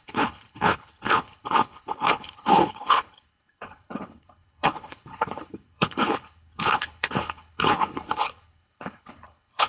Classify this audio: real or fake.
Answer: fake